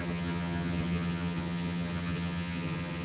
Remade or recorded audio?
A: remade